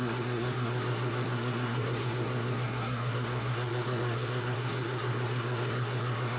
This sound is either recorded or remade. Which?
remade